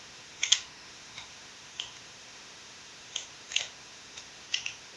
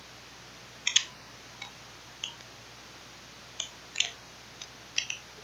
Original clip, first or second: second